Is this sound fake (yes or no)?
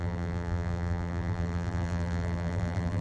yes